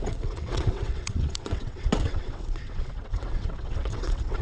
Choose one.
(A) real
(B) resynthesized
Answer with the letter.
B